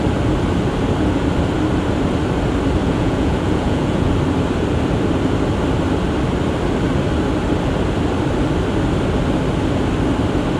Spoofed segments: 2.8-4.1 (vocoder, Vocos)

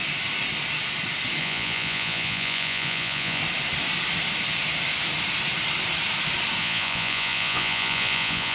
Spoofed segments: 1.4-3.4 (vocoder, Vocos); 6.6-8.5

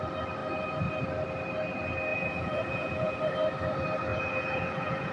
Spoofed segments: 2.1-3.2 (vocoder, Vocos); 4.1-5.1

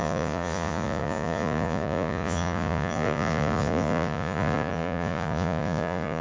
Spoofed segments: 0.0-6.2 (vocoder, Vocos)